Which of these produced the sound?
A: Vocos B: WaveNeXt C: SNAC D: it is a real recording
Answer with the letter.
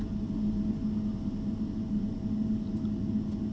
D